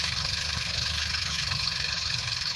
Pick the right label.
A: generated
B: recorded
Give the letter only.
A